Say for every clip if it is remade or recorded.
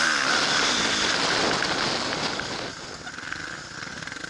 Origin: recorded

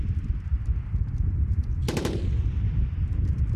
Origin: remade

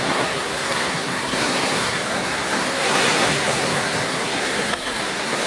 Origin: remade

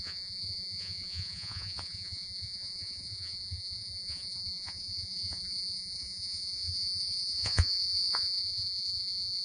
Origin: remade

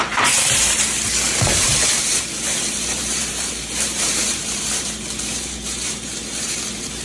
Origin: remade